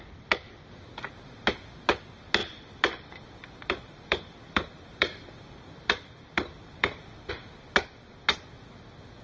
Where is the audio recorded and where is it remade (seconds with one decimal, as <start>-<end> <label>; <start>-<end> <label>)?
0.0-2.4 recorded; 2.4-7.3 remade; 7.3-9.2 recorded